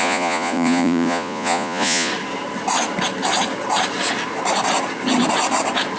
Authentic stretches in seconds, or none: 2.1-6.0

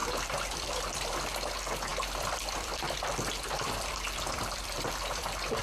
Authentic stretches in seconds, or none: 1.1-1.9

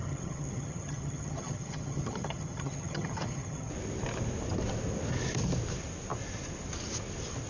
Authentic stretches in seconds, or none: 3.7-7.5

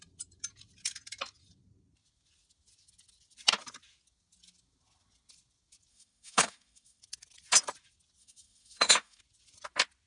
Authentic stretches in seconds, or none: 0.0-5.9; 7.0-8.2; 9.2-10.1

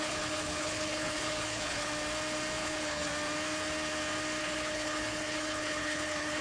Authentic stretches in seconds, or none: 1.9-2.6; 3.1-4.4

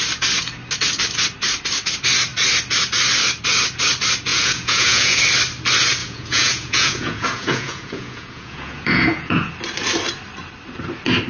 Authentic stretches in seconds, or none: 0.0-4.3; 5.2-6.0; 9.5-11.3

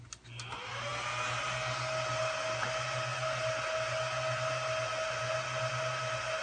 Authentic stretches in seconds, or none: 0.0-6.4